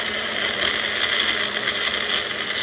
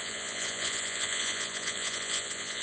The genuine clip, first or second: first